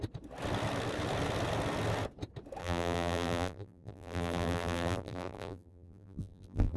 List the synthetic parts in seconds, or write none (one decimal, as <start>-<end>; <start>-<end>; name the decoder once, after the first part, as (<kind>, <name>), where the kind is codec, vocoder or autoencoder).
2.6-6.8 (vocoder, BigVGAN v2)